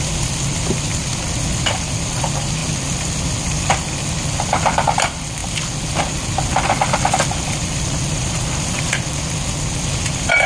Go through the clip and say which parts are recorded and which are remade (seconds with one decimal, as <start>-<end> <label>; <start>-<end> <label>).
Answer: 0.0-1.0 remade; 1.0-1.6 recorded; 1.6-5.4 remade; 5.4-7.4 recorded; 7.4-10.5 remade